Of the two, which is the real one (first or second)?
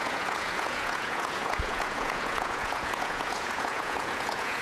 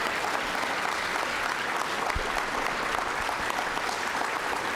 second